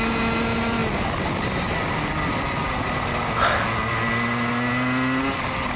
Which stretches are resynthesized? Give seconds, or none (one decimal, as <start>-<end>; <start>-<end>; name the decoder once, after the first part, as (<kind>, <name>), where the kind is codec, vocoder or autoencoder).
none